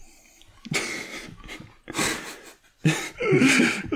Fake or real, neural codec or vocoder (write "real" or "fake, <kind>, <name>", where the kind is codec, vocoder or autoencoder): real